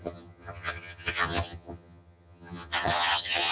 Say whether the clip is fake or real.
fake